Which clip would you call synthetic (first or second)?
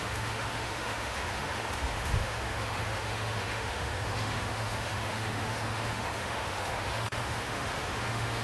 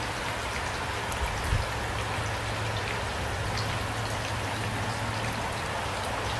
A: first